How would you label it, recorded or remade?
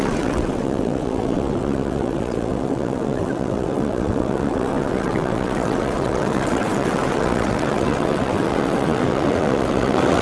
remade